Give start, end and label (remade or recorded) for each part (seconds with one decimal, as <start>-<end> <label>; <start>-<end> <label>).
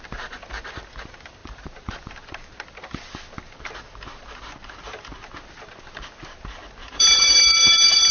0.0-1.4 recorded; 1.4-2.0 remade; 2.0-6.8 recorded; 6.8-7.4 remade; 7.4-8.1 recorded